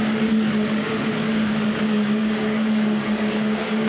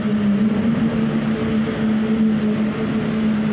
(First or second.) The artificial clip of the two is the first